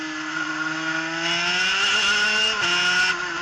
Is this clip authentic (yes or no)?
yes